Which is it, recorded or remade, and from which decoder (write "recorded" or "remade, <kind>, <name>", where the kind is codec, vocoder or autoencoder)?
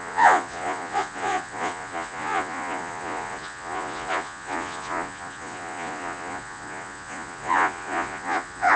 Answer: remade, vocoder, Vocos